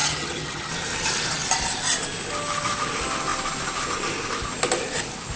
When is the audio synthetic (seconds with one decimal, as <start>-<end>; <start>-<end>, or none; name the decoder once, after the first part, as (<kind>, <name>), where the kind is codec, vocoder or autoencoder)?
0.0-0.7 (vocoder, HiFi-GAN)

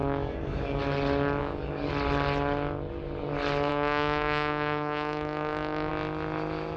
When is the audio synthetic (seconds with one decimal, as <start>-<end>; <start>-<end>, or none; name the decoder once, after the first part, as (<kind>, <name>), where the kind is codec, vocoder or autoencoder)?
0.0-0.8 (codec, DAC); 1.4-1.9; 3.7-5.9

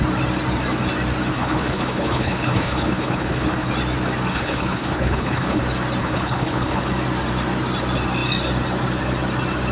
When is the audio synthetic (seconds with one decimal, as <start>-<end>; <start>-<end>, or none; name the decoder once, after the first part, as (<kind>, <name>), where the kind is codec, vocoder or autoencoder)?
1.3-3.7 (codec, HILCodec); 4.3-5.6; 6.0-6.8

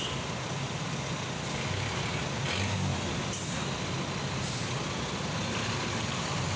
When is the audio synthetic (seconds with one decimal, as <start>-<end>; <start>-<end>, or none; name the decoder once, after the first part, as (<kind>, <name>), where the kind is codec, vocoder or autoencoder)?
none